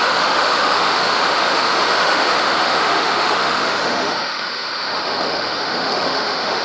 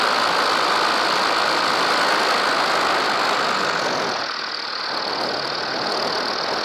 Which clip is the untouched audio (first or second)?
second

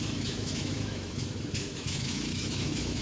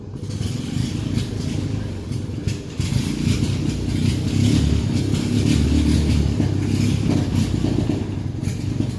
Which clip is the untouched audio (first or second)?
second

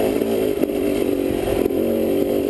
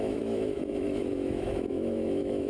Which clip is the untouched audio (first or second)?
first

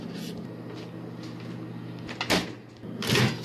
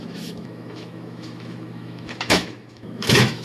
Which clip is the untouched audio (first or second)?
first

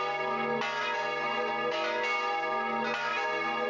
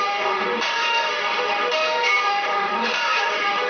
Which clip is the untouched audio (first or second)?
first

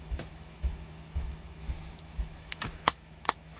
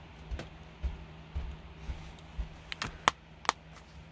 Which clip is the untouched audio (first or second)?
second